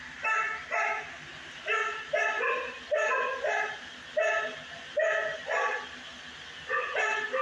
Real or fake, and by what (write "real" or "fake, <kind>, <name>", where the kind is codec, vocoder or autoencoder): real